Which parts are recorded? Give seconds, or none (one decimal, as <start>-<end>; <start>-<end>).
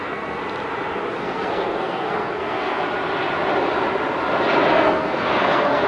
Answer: 0.4-1.1; 2.8-4.7